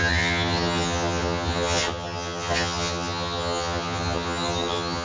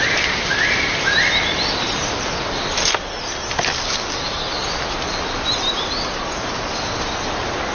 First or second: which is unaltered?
second